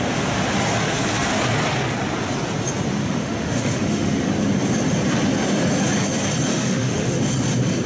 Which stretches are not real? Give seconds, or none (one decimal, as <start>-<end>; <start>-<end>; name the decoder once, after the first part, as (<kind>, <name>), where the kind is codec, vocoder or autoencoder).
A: 3.0-4.3 (autoencoder, DAC-VAE); 6.5-7.2